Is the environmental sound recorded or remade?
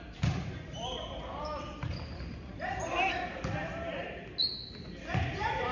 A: recorded